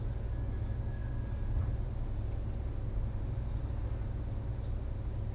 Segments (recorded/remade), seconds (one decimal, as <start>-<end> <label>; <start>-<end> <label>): 0.0-5.3 recorded